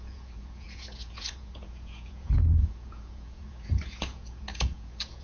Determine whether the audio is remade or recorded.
remade